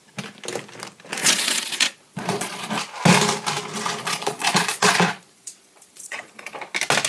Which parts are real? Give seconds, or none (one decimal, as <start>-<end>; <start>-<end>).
0.0-1.2; 2.7-4.0; 6.4-7.1

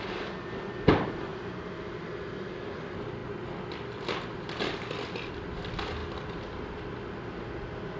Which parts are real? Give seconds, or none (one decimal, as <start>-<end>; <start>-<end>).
0.0-8.0

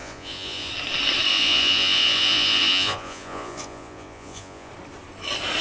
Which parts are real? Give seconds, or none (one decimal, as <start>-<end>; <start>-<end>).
0.7-1.3; 4.7-5.6

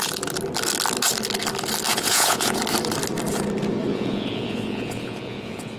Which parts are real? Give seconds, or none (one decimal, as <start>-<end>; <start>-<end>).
0.0-1.9; 2.6-3.9